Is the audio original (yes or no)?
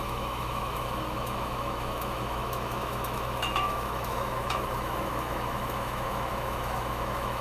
no